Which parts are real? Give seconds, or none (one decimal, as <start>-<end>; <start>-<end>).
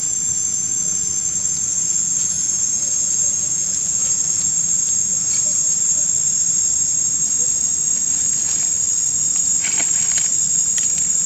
0.0-1.9; 5.9-11.3